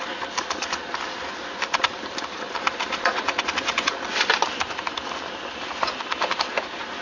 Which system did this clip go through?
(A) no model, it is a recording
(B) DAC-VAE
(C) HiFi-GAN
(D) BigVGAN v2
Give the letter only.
A